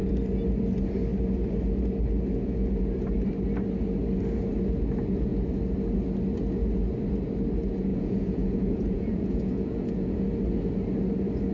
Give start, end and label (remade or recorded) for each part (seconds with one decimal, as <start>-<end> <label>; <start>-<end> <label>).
0.0-7.9 recorded; 7.9-10.2 remade; 10.2-11.5 recorded